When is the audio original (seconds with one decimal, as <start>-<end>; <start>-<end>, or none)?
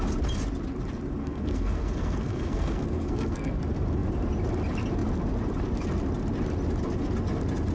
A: 0.0-1.2; 3.6-7.7